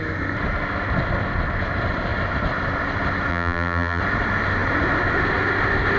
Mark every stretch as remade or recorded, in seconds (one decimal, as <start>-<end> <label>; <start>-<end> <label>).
0.0-3.3 recorded; 3.3-4.0 remade; 4.0-6.0 recorded